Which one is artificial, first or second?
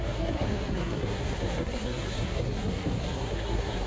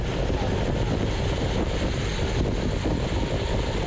first